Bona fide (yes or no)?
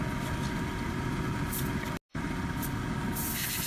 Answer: yes